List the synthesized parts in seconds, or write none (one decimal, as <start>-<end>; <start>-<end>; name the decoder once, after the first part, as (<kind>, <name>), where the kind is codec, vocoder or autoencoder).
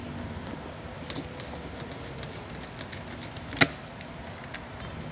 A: none